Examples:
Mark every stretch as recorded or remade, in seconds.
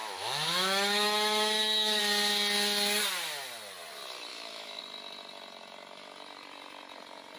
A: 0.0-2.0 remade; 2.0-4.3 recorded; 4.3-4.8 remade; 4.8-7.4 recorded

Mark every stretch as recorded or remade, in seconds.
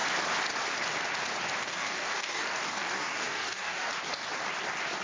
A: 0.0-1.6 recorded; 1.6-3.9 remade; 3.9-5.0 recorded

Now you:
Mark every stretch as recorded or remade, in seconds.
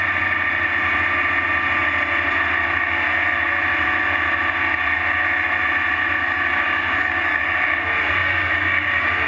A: 0.0-6.2 recorded; 6.2-7.8 remade; 7.8-8.2 recorded; 8.2-9.3 remade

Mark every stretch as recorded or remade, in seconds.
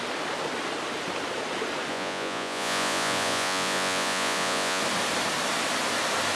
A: 0.0-1.9 recorded; 1.9-4.8 remade; 4.8-6.4 recorded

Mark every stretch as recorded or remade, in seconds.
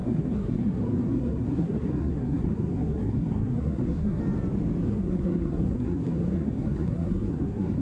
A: 0.0-4.2 remade; 4.2-4.8 recorded; 4.8-7.8 remade